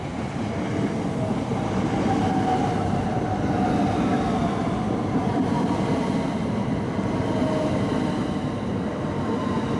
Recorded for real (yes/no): yes